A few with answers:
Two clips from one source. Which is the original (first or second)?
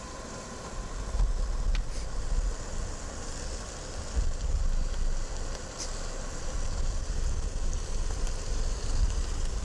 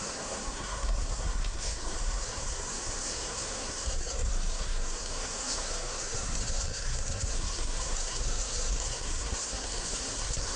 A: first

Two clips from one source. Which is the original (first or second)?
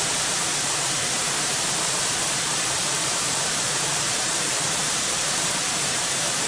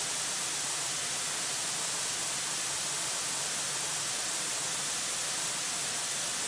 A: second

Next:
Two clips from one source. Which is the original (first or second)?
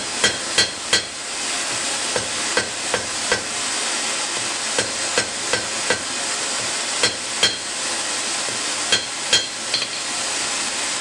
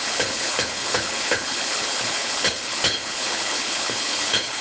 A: first